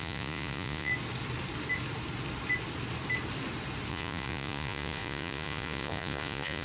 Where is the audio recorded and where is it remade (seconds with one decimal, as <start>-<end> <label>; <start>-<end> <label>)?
0.0-0.9 remade; 0.9-3.9 recorded; 3.9-6.6 remade